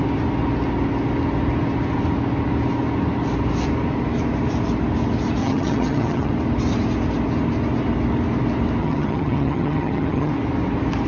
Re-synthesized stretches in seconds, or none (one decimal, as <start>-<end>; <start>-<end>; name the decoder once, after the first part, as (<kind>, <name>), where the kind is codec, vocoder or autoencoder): 5.4-6.3 (vocoder, HiFi-GAN); 8.8-10.3